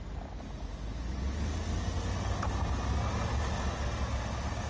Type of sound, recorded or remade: recorded